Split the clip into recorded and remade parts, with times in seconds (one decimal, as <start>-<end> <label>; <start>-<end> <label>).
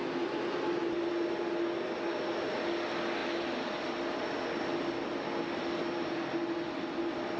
0.0-7.4 recorded